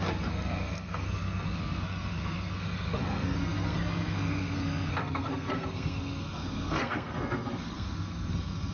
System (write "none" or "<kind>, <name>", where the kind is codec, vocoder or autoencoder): codec, SNAC